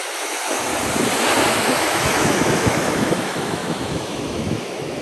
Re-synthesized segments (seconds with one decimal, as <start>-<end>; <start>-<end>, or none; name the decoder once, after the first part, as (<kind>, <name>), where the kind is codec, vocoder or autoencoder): 0.0-0.7 (autoencoder, DAC-VAE); 1.5-5.0